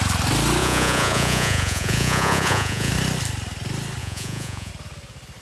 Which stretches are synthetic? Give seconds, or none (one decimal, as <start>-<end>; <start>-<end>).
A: 0.6-2.9; 4.0-4.7